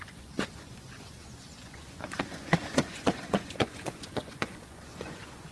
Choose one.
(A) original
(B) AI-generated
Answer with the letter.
B